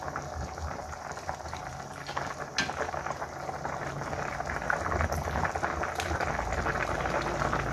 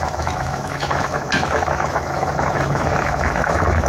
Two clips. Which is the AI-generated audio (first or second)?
second